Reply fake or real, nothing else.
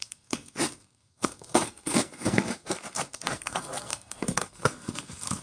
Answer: fake